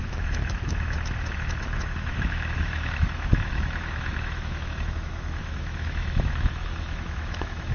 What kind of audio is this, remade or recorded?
remade